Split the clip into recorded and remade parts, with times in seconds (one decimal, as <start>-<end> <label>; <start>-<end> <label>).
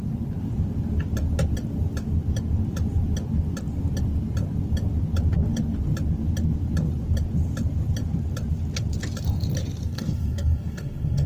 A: 0.0-9.9 recorded; 9.9-11.3 remade